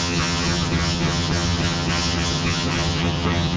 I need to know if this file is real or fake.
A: fake